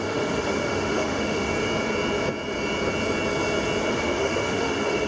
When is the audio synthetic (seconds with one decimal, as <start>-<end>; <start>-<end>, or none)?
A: 0.0-1.5; 3.9-5.1